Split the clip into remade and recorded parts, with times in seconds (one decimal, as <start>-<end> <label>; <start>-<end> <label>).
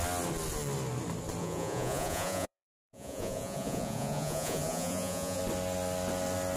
0.0-1.4 recorded; 1.4-5.4 remade; 5.4-6.6 recorded